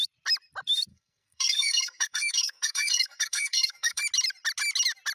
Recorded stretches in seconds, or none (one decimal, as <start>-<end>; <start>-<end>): 0.0-0.9; 4.0-5.1